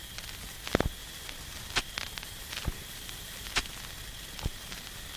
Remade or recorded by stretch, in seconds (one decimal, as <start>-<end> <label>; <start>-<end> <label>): 0.0-5.2 recorded